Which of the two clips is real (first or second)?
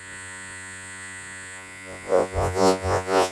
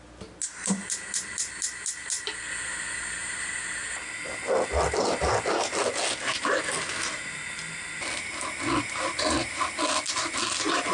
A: second